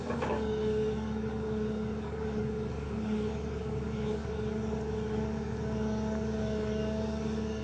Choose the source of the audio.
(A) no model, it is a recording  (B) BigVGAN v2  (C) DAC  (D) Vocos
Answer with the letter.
C